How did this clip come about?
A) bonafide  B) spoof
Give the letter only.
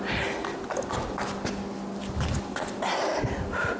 A